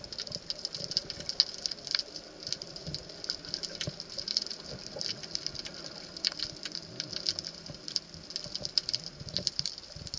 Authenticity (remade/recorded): recorded